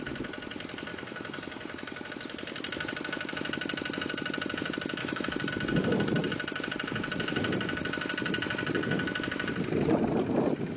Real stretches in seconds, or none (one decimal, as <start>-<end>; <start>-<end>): 0.0-0.9; 2.1-5.0; 5.5-10.8